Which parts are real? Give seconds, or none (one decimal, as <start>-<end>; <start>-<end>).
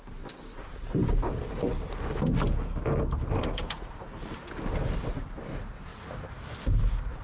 1.7-3.4; 4.4-5.0; 5.9-6.8